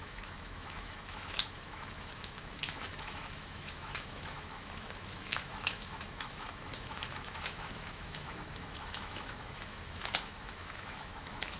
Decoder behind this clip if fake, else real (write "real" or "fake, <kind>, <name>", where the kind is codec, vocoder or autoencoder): fake, autoencoder, DAC-VAE